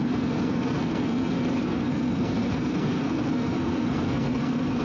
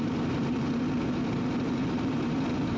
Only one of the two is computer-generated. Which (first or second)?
first